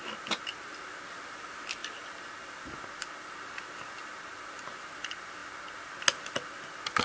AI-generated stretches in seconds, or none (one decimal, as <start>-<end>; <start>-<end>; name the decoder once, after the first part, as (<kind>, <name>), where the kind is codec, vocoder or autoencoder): 1.8-2.5 (vocoder, BigVGAN v2); 4.0-4.6